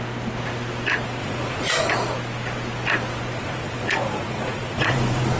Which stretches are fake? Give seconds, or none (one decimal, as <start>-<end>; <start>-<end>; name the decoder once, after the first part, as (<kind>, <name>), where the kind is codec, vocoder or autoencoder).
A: 1.2-1.9 (vocoder, Vocos); 3.4-5.4